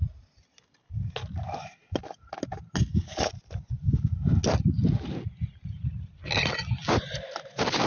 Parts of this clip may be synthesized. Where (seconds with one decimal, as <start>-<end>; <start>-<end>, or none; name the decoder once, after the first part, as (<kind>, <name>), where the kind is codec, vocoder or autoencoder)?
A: none